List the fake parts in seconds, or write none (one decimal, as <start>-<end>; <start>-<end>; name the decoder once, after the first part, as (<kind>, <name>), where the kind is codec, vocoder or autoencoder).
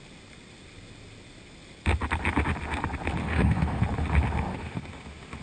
3.2-3.8 (autoencoder, DAC-VAE); 4.5-5.4